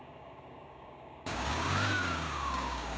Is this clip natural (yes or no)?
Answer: no